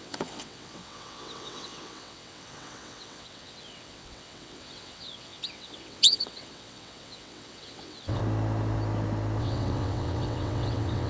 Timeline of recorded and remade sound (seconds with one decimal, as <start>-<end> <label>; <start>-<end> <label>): 0.0-8.2 remade; 8.2-9.4 recorded; 9.4-11.1 remade